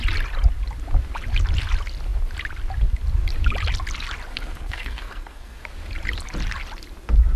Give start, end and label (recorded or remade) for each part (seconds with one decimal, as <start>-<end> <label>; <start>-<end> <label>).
0.0-4.3 recorded; 4.3-5.6 remade; 5.6-7.4 recorded